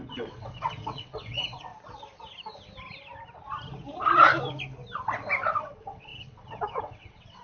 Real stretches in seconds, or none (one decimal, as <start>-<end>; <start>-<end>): 1.7-5.6